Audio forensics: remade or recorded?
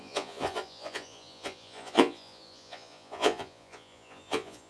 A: remade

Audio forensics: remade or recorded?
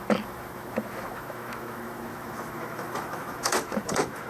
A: remade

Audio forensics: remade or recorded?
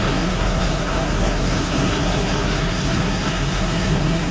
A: remade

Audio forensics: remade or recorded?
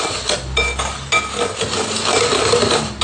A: recorded